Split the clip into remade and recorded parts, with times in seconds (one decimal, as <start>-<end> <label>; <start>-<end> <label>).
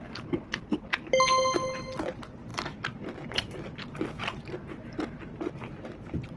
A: 0.0-2.5 recorded; 2.5-5.5 remade; 5.5-6.4 recorded